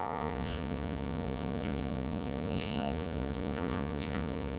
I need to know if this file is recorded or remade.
remade